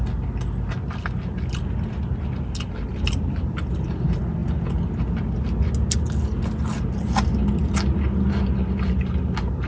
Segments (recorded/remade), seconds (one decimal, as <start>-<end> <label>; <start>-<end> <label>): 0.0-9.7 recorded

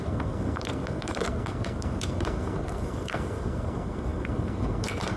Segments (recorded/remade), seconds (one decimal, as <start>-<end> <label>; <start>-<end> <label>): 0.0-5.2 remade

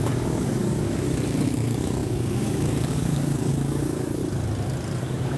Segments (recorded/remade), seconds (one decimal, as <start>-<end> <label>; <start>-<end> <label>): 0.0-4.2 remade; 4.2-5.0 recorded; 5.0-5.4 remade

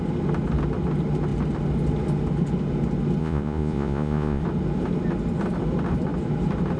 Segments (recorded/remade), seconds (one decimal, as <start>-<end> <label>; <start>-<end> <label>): 0.0-3.2 recorded; 3.2-4.4 remade; 4.4-6.8 recorded

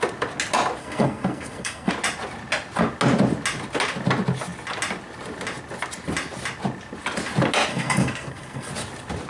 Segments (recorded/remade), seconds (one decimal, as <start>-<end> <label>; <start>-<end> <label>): 0.0-0.8 recorded; 0.8-1.9 remade; 1.9-7.7 recorded; 7.7-8.7 remade; 8.7-9.3 recorded